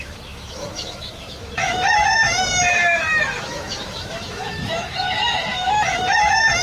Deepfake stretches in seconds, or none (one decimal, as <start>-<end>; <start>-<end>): 0.0-6.6